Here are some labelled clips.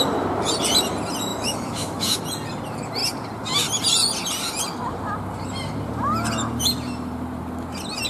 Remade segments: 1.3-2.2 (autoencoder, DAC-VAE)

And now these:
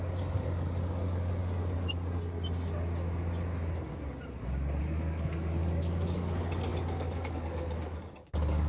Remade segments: 0.0-1.4 (codec, DAC); 4.8-8.7

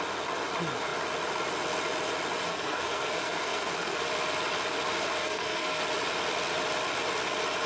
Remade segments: 2.5-4.0 (codec, SNAC); 5.2-5.8